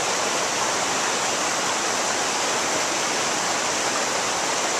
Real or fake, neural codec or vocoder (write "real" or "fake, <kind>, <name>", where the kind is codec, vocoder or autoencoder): real